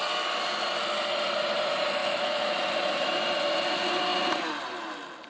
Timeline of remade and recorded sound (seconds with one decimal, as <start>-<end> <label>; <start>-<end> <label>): 0.0-2.0 recorded; 2.0-2.6 remade; 2.6-5.3 recorded